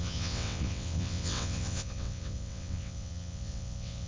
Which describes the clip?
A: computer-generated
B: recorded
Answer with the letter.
A